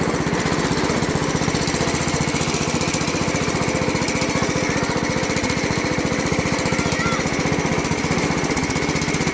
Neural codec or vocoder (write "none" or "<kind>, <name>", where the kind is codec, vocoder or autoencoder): none